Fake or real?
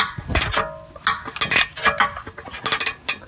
real